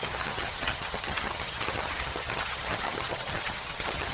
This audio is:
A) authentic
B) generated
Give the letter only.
B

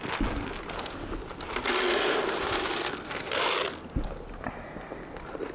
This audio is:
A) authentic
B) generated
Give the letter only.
A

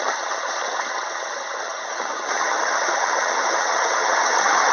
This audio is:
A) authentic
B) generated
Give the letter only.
B